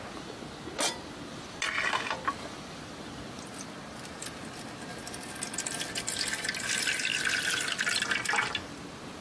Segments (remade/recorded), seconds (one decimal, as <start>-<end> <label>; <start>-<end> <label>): 0.0-9.2 recorded